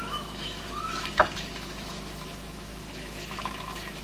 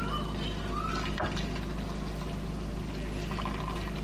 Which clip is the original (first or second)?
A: second